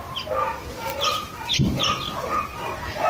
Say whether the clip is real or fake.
real